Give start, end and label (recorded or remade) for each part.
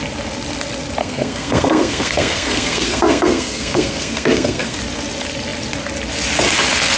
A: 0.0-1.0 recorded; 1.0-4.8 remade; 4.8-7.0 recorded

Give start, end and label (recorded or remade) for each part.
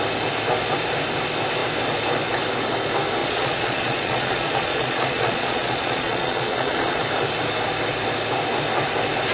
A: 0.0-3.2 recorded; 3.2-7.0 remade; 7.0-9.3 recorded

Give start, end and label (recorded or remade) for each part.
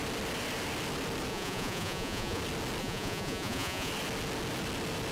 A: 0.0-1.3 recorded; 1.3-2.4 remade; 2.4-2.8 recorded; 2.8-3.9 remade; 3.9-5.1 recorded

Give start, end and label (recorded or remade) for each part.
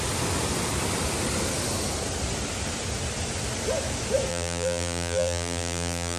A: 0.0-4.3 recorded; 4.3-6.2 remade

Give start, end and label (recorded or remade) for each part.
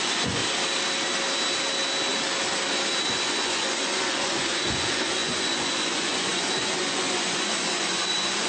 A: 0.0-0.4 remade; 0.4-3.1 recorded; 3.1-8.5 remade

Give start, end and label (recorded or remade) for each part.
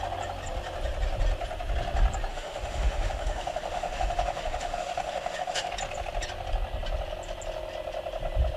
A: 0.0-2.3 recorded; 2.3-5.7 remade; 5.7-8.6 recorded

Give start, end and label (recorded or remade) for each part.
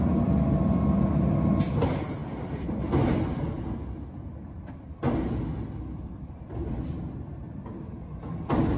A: 0.0-8.8 recorded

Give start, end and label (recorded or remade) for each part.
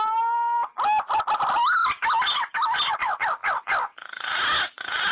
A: 0.0-5.1 recorded